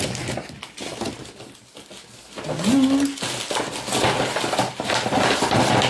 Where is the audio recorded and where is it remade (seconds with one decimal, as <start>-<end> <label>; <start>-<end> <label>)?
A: 0.0-5.9 recorded